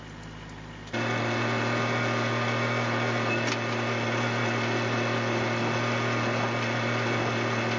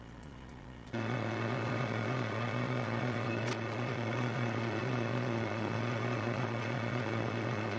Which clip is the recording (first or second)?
first